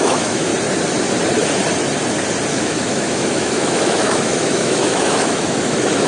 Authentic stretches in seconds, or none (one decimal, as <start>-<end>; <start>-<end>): 0.5-2.5